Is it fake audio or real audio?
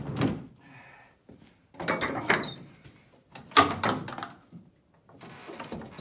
real